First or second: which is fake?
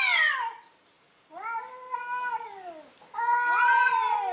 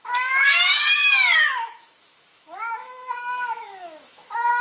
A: second